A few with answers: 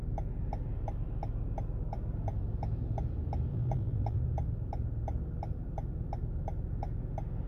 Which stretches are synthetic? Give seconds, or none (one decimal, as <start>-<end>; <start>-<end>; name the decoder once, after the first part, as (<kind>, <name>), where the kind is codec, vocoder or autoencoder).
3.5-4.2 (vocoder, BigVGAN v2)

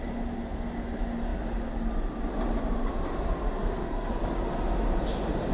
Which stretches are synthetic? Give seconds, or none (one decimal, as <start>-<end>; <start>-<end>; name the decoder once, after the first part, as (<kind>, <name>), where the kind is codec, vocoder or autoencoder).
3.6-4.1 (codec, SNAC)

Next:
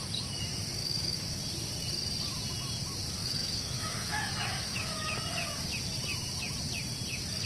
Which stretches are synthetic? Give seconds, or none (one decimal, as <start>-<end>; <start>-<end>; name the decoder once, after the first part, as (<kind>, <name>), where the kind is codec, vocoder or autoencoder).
0.8-1.4 (autoencoder, DAC-VAE); 3.2-5.2

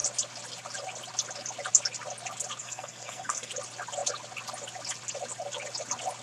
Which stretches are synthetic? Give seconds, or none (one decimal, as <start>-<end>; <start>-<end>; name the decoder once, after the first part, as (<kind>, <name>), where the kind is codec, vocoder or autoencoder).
2.6-3.5 (codec, SNAC)